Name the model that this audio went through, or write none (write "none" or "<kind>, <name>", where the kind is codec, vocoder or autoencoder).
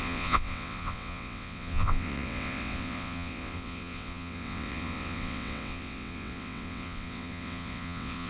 vocoder, WaveNeXt